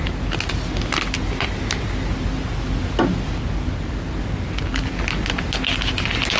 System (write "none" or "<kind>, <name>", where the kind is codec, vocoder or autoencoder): none